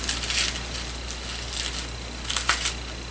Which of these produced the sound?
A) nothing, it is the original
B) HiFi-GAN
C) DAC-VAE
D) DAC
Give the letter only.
A